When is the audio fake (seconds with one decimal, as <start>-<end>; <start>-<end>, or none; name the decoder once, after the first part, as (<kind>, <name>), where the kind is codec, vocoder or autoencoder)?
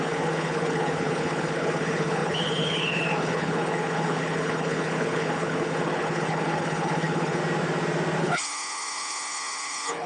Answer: 0.0-7.4 (codec, HILCodec); 8.2-10.1